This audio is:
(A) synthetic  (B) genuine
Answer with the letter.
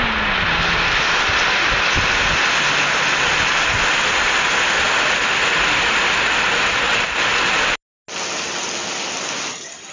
B